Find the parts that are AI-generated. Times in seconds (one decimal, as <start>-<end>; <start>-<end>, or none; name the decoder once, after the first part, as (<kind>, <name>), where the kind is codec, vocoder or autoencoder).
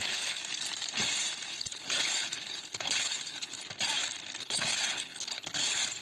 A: 0.0-0.4 (codec, HILCodec); 1.5-3.6; 4.4-6.0